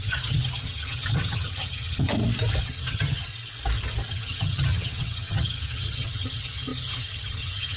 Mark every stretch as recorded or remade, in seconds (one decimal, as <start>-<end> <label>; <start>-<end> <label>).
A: 0.0-2.1 remade; 2.1-2.6 recorded; 2.6-3.3 remade; 3.3-4.1 recorded; 4.1-7.8 remade